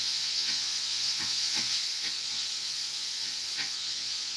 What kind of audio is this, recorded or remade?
remade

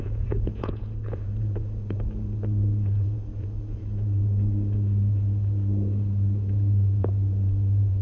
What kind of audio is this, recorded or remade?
remade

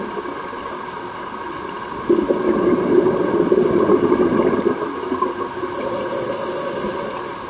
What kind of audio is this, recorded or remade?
recorded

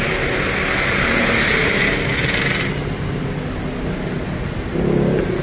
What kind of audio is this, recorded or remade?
recorded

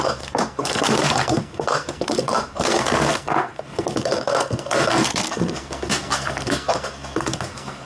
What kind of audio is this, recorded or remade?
remade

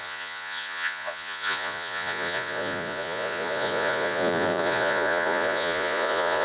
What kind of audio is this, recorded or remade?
remade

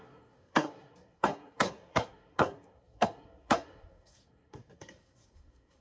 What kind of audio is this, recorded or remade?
remade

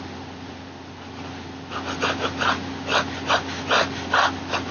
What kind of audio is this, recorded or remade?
recorded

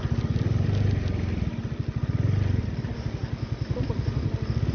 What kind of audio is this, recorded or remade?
recorded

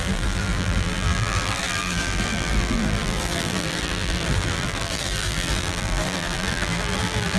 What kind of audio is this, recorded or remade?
remade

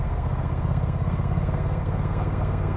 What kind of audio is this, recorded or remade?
remade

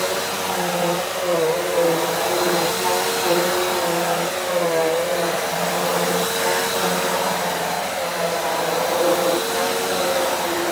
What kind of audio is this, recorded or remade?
recorded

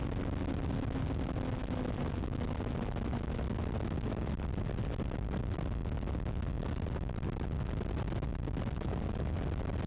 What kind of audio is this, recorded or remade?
recorded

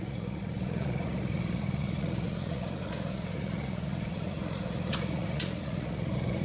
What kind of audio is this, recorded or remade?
remade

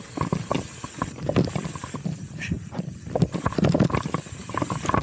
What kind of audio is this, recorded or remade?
recorded